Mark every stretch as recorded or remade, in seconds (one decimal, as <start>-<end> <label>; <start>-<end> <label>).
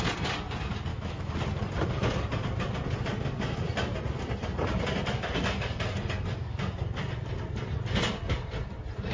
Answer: 0.0-0.9 recorded; 0.9-1.4 remade; 1.4-9.1 recorded